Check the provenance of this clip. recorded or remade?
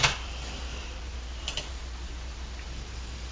remade